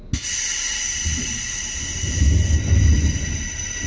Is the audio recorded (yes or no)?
yes